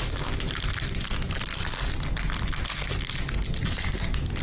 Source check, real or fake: real